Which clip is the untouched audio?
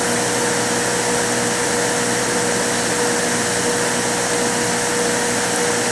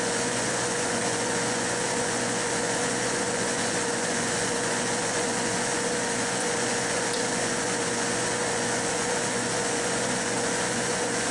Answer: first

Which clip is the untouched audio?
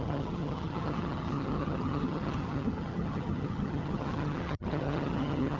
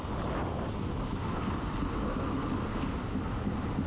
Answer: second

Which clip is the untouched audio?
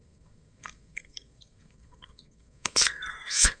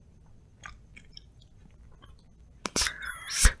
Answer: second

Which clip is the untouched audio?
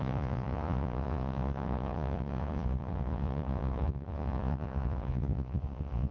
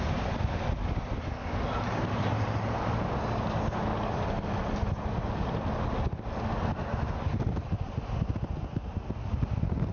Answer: second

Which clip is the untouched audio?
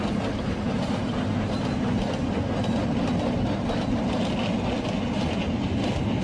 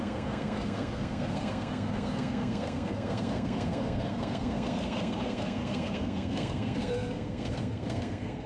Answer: first